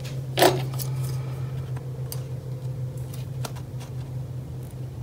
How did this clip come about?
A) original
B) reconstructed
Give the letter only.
A